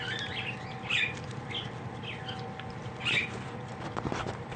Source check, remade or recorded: recorded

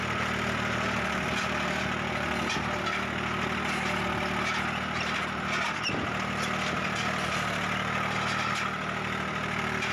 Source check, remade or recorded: recorded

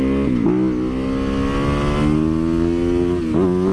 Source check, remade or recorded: recorded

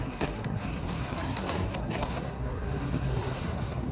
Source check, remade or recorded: remade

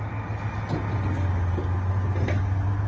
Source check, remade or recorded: recorded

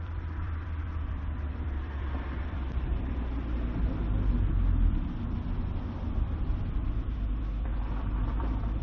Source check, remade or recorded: remade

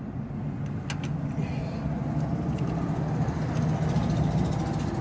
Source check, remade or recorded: recorded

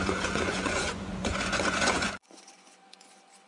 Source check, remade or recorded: remade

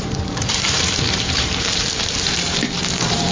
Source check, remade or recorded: remade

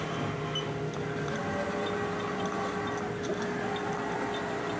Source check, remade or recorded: recorded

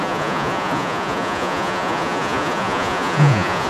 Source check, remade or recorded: remade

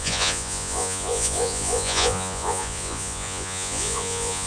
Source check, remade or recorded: remade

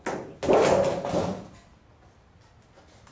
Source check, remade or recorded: recorded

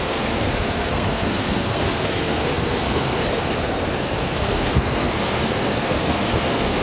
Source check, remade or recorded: remade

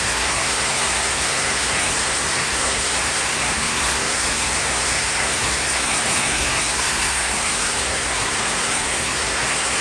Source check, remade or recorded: remade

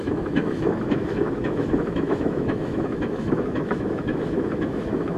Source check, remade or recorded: remade